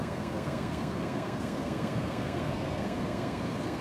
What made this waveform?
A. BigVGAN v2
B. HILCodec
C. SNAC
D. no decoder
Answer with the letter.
C